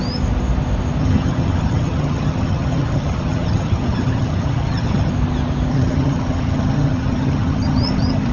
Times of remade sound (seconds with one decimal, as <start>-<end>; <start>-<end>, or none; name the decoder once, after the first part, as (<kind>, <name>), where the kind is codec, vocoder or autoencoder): 1.0-5.1 (vocoder, HiFi-GAN); 5.7-8.3